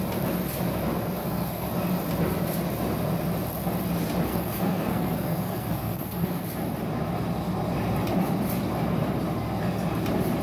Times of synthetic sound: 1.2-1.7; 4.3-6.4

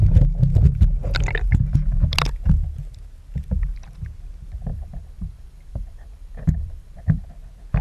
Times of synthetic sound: 4.7-7.2

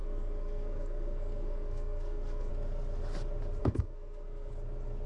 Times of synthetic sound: 0.0-2.5; 3.6-4.5

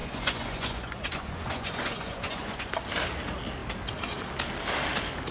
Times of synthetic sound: 0.0-2.7

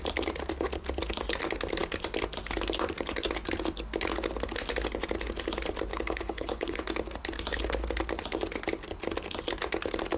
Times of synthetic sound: 5.9-6.8